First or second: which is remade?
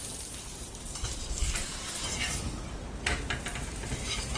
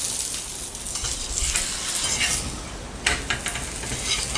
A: first